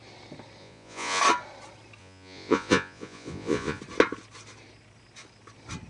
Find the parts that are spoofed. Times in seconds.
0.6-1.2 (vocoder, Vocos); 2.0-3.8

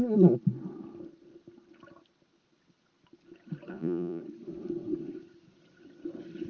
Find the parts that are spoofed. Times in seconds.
3.7-4.2 (vocoder, Vocos)

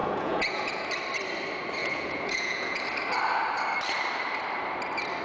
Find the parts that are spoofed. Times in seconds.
0.0-0.9 (vocoder, Vocos); 1.8-2.8

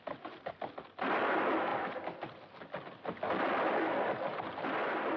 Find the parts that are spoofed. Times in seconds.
none

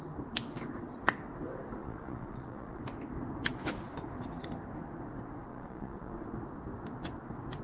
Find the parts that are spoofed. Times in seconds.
1.8-2.8 (vocoder, Vocos); 5.5-6.1

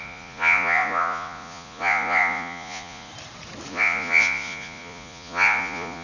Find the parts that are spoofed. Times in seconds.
0.0-3.1 (vocoder, Vocos); 3.7-6.0

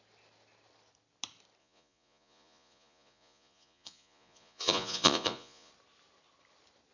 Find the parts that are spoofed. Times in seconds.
1.6-5.7 (vocoder, Vocos)

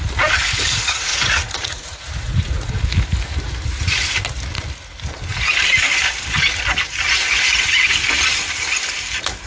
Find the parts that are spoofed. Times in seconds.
1.1-2.7 (vocoder, Vocos)